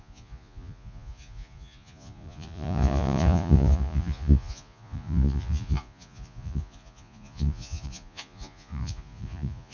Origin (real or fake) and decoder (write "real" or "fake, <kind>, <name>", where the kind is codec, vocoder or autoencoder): fake, vocoder, Vocos